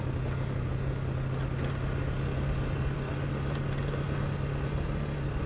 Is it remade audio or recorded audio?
recorded